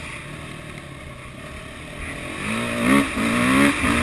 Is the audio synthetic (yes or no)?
no